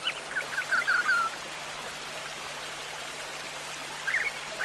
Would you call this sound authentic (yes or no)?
no